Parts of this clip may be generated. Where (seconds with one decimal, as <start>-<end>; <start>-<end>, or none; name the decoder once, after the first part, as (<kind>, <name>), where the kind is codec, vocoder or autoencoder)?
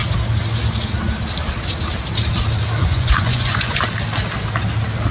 2.8-3.8 (vocoder, Vocos)